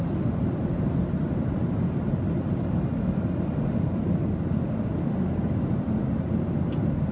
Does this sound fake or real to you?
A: real